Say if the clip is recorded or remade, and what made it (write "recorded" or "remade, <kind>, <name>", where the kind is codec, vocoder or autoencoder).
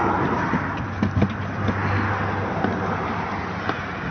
recorded